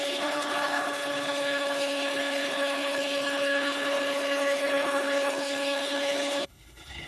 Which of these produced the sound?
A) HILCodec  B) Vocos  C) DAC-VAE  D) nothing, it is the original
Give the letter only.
A